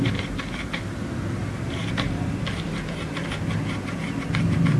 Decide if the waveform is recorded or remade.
recorded